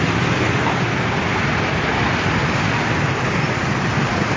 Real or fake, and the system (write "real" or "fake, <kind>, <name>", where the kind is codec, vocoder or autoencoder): real